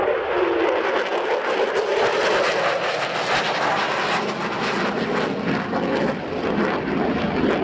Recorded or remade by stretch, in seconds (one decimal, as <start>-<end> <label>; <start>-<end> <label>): 0.0-7.6 recorded